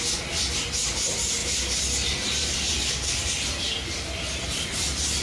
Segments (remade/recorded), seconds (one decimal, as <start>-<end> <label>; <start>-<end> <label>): 0.0-5.2 recorded